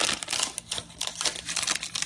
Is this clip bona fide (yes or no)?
yes